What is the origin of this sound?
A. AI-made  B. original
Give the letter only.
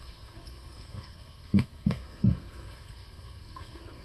A